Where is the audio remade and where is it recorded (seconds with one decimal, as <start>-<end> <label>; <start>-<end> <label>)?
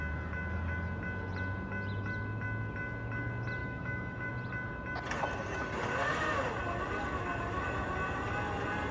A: 0.0-3.6 recorded; 3.6-4.3 remade; 4.3-8.9 recorded